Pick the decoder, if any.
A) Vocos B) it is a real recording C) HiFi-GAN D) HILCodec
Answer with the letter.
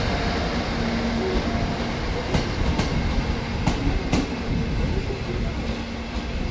B